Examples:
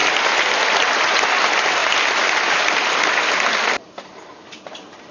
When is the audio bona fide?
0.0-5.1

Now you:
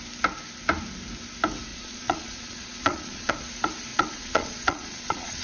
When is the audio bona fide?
0.0-1.7; 3.3-3.9

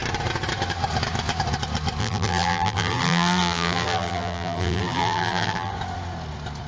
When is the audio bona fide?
0.0-2.0; 5.7-6.7

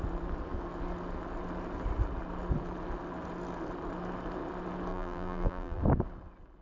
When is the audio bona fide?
0.0-4.9; 5.8-6.6